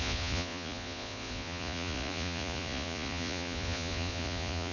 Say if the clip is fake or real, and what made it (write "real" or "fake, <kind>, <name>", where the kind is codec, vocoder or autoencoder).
fake, vocoder, Vocos